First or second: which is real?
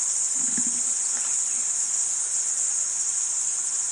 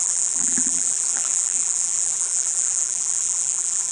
first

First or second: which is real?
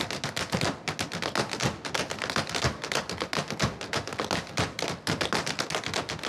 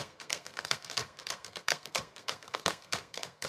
first